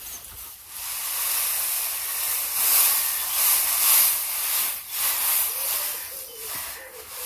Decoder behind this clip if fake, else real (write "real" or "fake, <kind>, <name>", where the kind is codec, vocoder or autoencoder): real